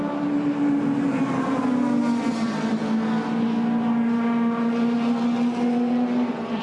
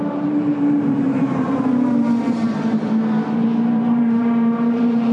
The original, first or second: first